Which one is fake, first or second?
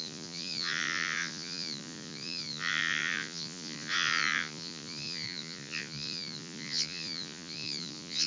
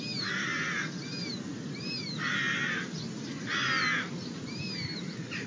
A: first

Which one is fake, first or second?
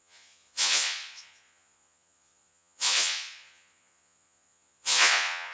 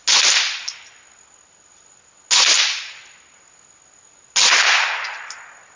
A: first